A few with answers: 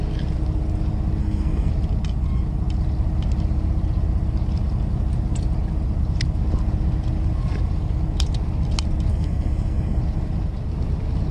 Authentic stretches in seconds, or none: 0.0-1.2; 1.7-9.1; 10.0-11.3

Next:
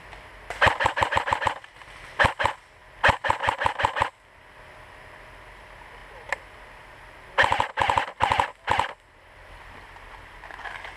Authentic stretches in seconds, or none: 0.0-11.0

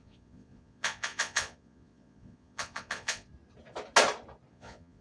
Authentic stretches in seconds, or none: 3.3-4.5

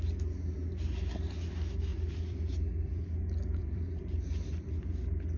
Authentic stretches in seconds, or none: 0.0-1.9; 3.0-3.6; 4.9-5.4

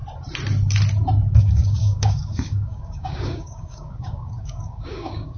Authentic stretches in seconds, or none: 0.0-1.4

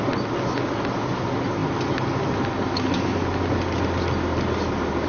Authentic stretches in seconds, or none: 0.0-5.1